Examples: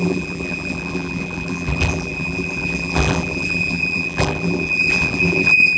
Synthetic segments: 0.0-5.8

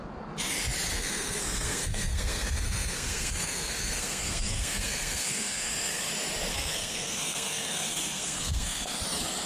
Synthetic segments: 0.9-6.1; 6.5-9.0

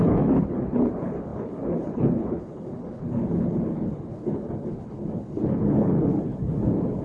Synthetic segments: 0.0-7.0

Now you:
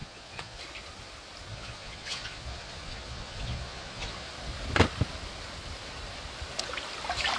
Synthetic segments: 0.0-0.6; 1.5-4.3

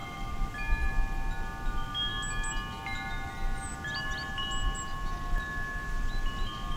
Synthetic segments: none

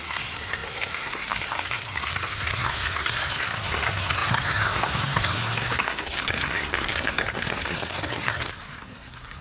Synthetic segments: 0.0-9.4